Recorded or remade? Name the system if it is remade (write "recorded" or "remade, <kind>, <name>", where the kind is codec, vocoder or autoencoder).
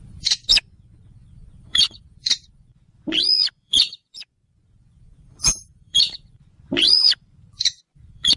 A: remade, vocoder, Vocos